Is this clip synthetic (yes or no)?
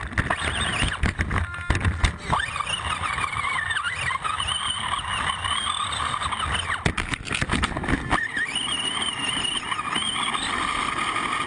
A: no